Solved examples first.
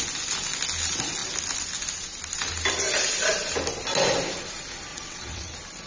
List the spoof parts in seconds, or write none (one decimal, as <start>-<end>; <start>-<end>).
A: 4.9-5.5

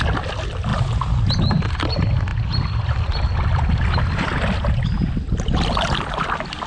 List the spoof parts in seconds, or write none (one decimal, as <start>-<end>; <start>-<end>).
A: none

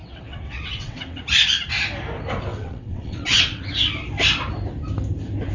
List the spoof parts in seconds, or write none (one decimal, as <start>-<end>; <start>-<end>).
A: 0.0-1.2; 2.5-3.7